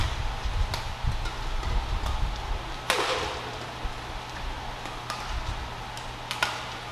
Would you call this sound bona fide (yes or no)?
yes